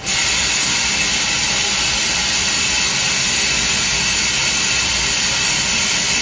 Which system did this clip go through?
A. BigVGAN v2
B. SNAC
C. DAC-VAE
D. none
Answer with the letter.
D